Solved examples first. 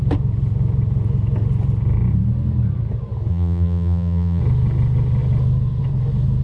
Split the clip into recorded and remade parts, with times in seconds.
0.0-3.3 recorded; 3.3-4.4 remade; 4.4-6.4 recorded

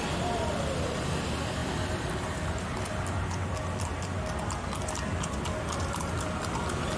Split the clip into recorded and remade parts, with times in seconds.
0.0-7.0 recorded

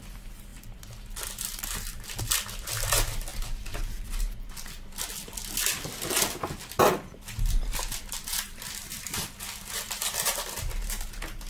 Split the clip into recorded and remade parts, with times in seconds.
0.0-11.5 remade